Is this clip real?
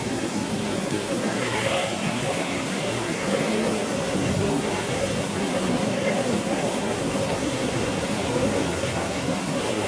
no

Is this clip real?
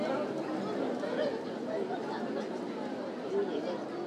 yes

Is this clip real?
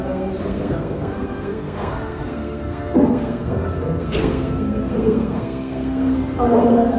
no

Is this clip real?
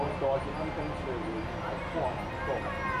yes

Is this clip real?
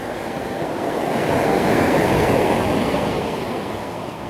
no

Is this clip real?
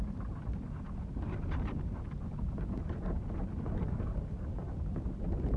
yes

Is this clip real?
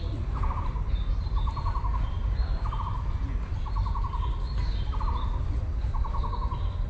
yes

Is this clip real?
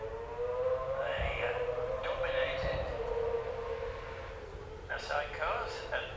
yes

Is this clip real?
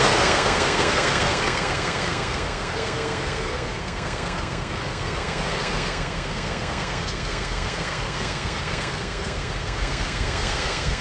no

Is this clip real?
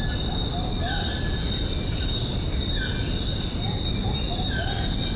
yes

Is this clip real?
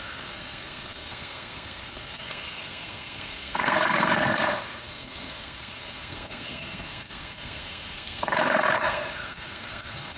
no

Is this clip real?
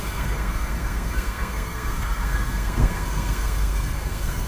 no